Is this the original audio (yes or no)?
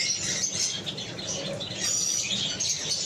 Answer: yes